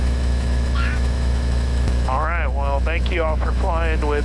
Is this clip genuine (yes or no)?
no